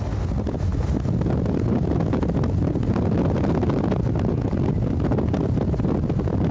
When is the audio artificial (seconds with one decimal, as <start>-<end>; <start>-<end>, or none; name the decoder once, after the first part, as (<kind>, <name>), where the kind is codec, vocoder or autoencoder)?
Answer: none